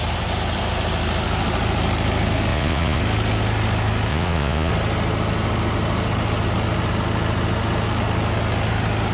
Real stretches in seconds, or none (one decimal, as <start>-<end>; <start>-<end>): 0.0-2.5; 3.0-4.1; 4.7-9.1

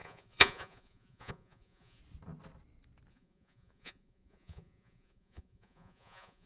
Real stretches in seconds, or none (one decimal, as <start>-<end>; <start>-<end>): 2.0-3.1

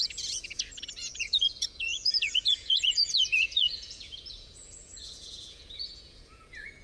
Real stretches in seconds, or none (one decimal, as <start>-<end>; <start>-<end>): none

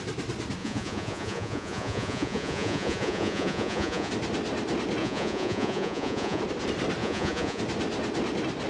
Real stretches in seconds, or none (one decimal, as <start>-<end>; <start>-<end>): 0.0-0.6; 4.1-5.0; 6.4-7.0; 7.6-8.7

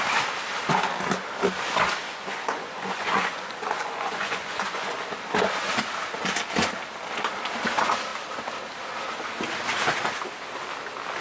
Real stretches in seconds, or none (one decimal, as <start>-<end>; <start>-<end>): 0.0-2.0; 5.0-11.2